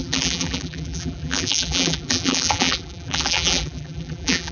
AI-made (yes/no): yes